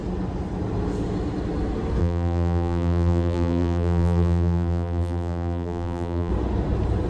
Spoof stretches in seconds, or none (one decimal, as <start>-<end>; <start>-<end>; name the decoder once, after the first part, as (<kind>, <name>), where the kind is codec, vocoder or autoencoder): 2.0-6.3 (vocoder, BigVGAN v2)

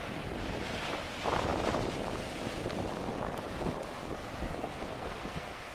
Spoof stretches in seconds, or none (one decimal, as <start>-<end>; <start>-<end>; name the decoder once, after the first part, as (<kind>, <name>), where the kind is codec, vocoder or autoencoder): 4.5-5.7 (codec, SNAC)

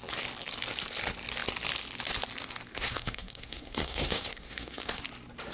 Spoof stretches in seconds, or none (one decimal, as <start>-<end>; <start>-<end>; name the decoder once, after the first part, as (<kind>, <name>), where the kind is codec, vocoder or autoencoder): 2.7-5.0 (codec, SNAC)

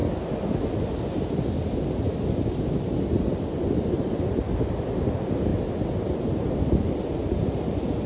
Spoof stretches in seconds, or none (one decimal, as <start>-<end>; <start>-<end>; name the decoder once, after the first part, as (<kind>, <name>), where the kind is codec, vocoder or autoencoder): none